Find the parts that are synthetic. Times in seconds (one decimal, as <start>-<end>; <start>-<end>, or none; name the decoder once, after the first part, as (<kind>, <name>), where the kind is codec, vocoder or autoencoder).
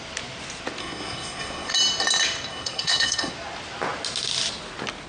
0.8-1.7 (codec, SNAC); 2.5-3.3